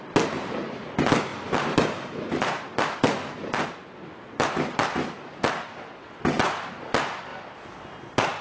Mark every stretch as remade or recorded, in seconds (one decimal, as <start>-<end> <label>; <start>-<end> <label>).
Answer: 0.0-8.4 recorded